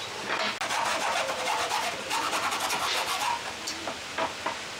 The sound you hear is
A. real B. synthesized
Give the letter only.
A